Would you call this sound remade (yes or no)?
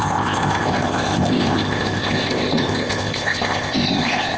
yes